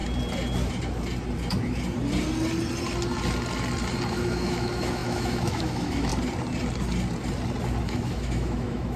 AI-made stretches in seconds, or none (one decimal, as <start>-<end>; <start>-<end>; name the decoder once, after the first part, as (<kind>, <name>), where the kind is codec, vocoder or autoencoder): 4.1-6.1 (autoencoder, DAC-VAE); 7.8-9.0